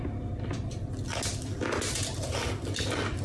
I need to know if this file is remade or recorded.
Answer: recorded